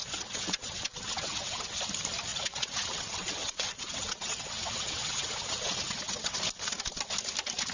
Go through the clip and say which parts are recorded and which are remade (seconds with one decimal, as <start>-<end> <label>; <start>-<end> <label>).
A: 0.0-1.8 remade; 1.8-2.3 recorded; 2.3-6.4 remade; 6.4-7.7 recorded